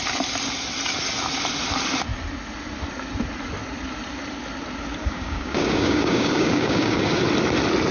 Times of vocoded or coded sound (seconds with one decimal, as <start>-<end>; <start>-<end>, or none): 5.0-7.2